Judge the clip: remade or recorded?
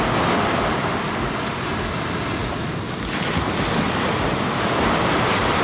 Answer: recorded